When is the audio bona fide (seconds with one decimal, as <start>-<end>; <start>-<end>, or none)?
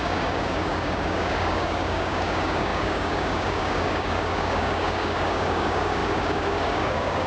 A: none